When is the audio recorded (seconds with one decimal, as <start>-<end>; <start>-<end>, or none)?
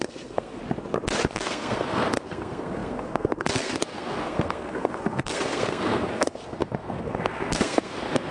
0.6-1.2